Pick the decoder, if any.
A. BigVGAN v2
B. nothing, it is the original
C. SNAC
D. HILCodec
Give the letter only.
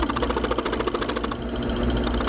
B